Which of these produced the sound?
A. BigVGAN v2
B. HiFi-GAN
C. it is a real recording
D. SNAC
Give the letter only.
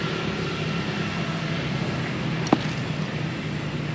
C